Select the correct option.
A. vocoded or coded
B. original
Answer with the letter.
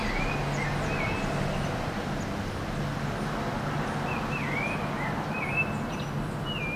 B